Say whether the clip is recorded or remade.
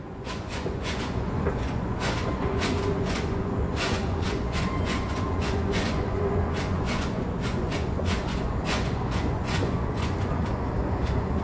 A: remade